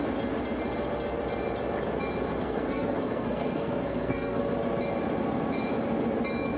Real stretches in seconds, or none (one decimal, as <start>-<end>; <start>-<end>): 0.0-2.4; 4.4-6.6